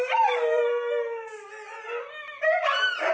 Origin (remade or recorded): recorded